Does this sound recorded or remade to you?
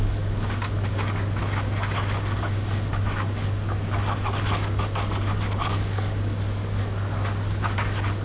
remade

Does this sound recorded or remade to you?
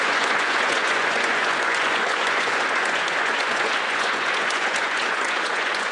remade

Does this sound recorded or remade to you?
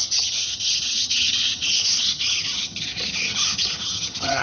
remade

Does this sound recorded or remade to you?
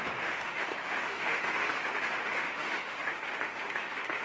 remade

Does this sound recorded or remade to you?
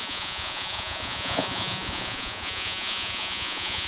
remade